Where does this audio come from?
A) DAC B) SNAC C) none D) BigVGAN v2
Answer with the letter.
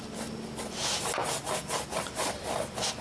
C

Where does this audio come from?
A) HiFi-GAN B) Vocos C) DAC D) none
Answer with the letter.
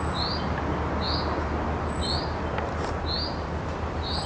D